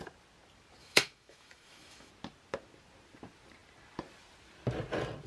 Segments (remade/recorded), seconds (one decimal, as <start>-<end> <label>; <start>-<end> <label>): 0.0-0.8 recorded; 0.8-2.1 remade; 2.1-5.3 recorded